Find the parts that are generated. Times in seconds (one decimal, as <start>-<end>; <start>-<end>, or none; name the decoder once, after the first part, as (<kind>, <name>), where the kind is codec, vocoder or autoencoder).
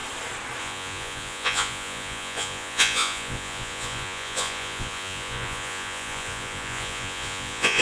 0.6-7.8 (vocoder, Vocos)